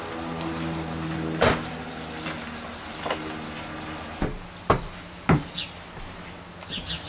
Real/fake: real